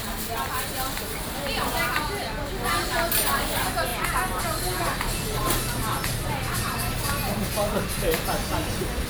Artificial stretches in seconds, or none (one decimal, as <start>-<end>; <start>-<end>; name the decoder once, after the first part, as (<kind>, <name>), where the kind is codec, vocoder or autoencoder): none